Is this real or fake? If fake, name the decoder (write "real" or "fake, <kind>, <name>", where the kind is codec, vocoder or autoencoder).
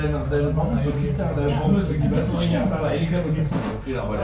real